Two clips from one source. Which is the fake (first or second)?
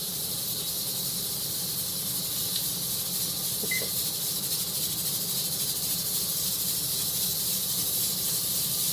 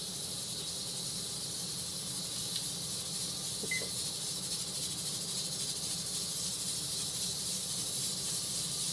first